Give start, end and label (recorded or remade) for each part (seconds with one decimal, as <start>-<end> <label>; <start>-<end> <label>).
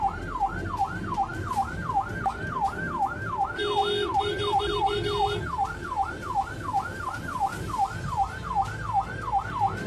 0.0-9.9 recorded